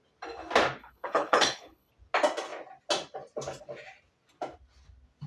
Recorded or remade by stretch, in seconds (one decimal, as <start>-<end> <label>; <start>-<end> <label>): 0.0-0.8 recorded; 0.8-1.9 remade; 1.9-5.3 recorded